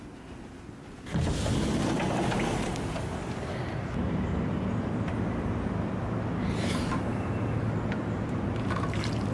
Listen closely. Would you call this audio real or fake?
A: real